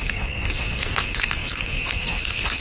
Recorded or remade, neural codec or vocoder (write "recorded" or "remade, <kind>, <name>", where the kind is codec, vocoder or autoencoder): remade, codec, SNAC